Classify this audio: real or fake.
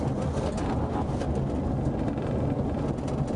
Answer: real